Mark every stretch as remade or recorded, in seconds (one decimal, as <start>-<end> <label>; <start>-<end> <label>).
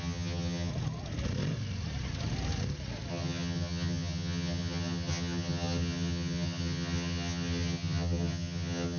0.0-0.7 remade; 0.7-3.1 recorded; 3.1-9.0 remade